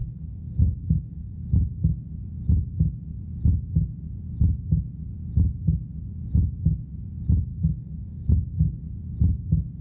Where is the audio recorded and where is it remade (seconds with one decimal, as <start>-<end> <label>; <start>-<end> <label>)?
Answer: 0.0-1.5 remade; 1.5-7.5 recorded; 7.5-8.8 remade; 8.8-9.8 recorded